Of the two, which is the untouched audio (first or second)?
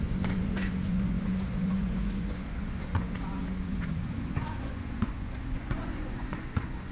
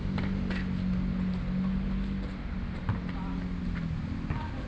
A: second